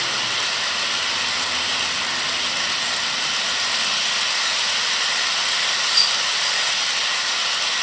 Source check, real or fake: real